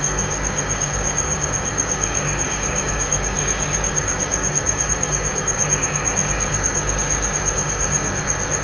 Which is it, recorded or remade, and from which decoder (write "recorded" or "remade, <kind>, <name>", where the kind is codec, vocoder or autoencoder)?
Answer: remade, codec, DAC